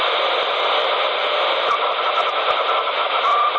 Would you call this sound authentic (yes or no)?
yes